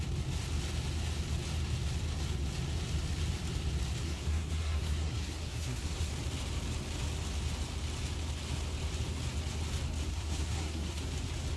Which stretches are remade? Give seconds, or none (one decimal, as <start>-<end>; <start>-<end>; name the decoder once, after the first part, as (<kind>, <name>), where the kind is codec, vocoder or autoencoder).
4.0-6.1 (codec, SNAC); 10.1-11.0